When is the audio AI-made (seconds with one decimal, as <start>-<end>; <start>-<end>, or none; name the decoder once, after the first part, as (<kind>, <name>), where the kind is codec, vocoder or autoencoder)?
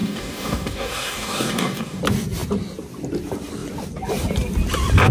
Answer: 0.0-2.0 (codec, DAC)